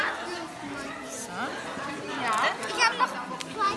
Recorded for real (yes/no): yes